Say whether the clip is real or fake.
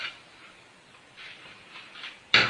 fake